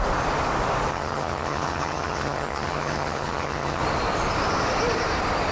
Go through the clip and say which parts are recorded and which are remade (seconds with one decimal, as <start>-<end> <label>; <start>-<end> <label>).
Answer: 0.0-0.9 recorded; 0.9-3.8 remade; 3.8-5.5 recorded